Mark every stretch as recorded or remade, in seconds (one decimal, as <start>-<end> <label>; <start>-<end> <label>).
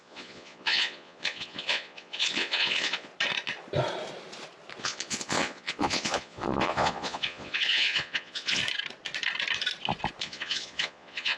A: 0.0-3.1 remade; 3.1-4.8 recorded; 4.8-8.6 remade; 8.6-10.2 recorded; 10.2-11.4 remade